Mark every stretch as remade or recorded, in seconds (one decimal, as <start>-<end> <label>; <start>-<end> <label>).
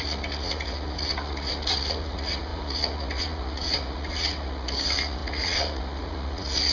0.0-6.7 remade